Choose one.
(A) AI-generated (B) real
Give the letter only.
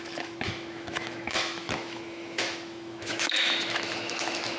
A